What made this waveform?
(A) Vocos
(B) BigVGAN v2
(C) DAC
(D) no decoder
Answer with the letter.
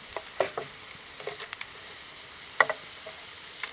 D